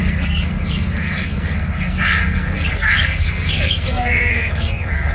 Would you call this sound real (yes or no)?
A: no